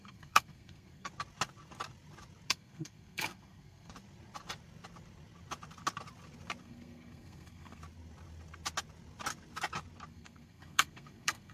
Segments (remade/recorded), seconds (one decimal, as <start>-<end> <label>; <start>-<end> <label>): 0.0-1.1 remade; 1.1-2.5 recorded; 2.5-3.9 remade; 3.9-6.6 recorded; 6.6-7.8 remade; 7.8-10.1 recorded; 10.1-11.5 remade